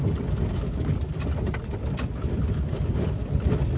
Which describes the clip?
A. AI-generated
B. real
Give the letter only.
B